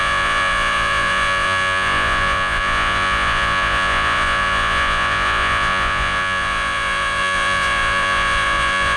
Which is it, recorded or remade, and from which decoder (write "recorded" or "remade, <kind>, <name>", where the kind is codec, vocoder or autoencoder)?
remade, vocoder, Vocos